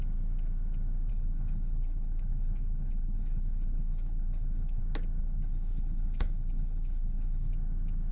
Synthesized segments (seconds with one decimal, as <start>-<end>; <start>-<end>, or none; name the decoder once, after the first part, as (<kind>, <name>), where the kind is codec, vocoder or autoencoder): 1.1-4.8 (codec, HILCodec); 5.2-7.5